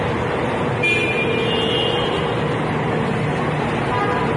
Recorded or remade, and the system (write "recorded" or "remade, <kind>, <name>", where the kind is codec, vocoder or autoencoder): recorded